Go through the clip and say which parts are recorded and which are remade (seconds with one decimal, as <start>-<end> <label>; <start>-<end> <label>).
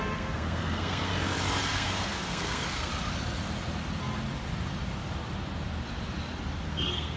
0.0-1.1 remade; 1.1-1.7 recorded; 1.7-2.9 remade; 2.9-6.7 recorded; 6.7-7.2 remade